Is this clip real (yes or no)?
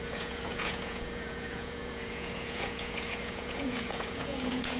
no